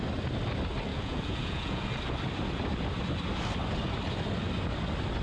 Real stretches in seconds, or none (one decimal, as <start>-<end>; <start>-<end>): 0.0-0.9; 2.0-5.2